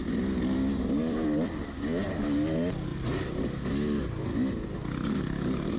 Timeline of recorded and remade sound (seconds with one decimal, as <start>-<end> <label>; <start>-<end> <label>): 0.0-5.8 recorded